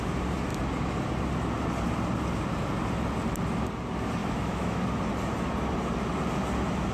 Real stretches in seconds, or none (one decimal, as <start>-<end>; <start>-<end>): 0.0-4.2; 4.8-6.9